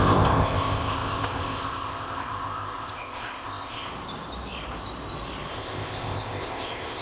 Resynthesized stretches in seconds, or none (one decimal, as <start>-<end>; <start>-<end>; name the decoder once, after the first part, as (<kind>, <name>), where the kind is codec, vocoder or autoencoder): 0.0-3.9 (codec, ZipCodec); 5.5-7.0